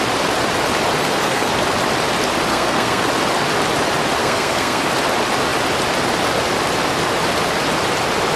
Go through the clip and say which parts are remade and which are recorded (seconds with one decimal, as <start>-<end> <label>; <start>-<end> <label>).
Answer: 0.0-1.0 recorded; 1.0-1.5 remade; 1.5-2.5 recorded; 2.5-3.1 remade; 3.1-4.2 recorded; 4.2-4.8 remade; 4.8-8.4 recorded